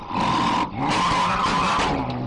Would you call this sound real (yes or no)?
yes